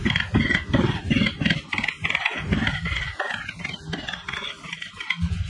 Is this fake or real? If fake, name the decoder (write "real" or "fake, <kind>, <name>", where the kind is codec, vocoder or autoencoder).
fake, vocoder, BigVGAN v2